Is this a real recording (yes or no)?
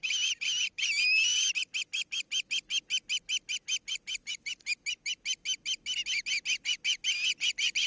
yes